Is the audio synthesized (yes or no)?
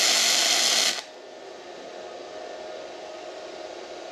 no